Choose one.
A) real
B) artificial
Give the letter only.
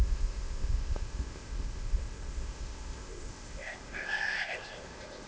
B